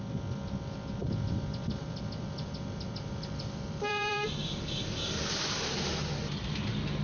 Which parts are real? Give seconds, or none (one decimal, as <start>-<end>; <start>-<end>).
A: 0.0-1.0; 5.2-7.0